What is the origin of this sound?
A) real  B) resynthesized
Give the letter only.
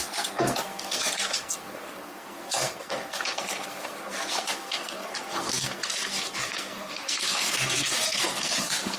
B